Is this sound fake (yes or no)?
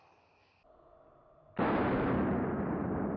no